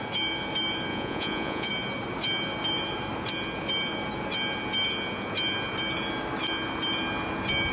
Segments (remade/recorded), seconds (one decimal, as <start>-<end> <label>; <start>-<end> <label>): 0.0-0.9 recorded; 0.9-1.7 remade; 1.7-7.7 recorded